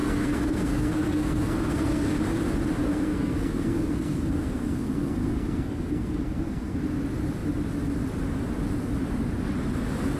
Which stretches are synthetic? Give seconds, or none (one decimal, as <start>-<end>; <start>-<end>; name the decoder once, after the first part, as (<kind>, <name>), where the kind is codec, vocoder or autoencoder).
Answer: 0.0-2.2 (codec, SNAC); 2.8-6.8